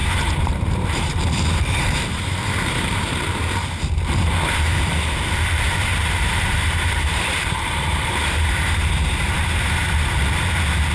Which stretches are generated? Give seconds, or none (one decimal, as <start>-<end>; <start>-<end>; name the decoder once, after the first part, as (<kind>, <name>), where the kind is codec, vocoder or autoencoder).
0.0-3.4 (vocoder, BigVGAN v2); 5.9-9.7